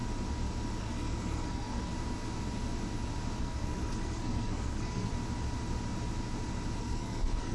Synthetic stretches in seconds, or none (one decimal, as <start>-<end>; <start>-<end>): 0.8-1.9; 3.4-5.1; 6.8-7.5